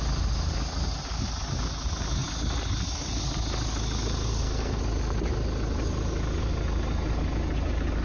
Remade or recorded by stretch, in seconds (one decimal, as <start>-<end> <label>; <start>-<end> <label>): 0.0-4.3 recorded; 4.3-4.8 remade; 4.8-8.0 recorded